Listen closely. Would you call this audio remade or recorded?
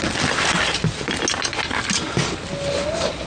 recorded